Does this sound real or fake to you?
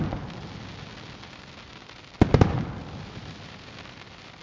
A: real